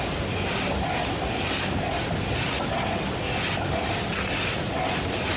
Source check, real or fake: real